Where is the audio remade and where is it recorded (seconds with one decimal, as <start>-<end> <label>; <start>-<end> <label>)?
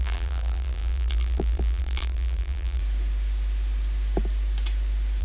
0.0-2.8 remade; 2.8-5.2 recorded